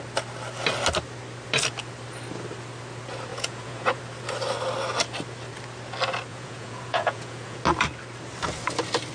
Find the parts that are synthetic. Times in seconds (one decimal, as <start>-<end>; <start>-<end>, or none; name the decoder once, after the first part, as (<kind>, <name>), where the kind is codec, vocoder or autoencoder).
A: 3.3-4.0 (vocoder, Vocos); 6.3-7.6

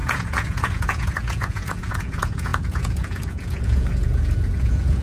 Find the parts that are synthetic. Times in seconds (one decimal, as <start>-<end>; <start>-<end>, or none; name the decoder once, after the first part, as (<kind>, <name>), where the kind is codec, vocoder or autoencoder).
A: 0.0-5.0 (vocoder, Vocos)

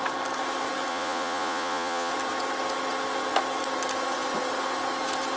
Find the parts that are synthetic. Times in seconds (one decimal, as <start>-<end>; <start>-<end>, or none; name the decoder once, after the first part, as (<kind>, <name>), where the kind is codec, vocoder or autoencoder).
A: 0.9-2.1 (vocoder, Vocos)

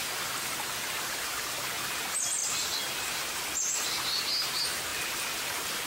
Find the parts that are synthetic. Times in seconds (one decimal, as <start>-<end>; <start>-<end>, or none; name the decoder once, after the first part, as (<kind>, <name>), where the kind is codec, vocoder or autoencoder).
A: none

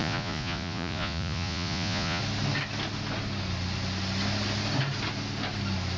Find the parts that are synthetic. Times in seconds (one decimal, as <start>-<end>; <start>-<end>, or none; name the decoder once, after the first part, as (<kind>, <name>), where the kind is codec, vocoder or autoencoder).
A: 0.0-2.2 (vocoder, Vocos)